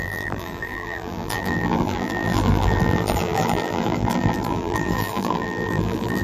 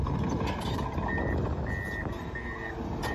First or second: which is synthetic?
first